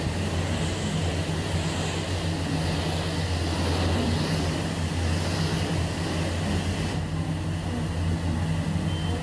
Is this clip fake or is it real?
real